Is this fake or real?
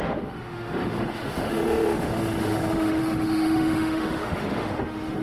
fake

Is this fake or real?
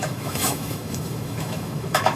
fake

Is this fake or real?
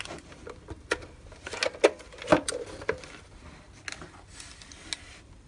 real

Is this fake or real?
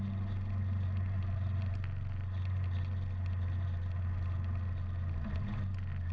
real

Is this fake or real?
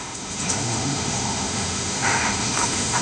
fake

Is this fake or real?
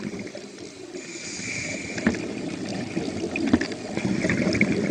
real